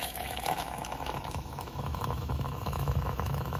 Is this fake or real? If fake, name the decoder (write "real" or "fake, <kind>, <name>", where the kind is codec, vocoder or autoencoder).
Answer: fake, autoencoder, DAC-VAE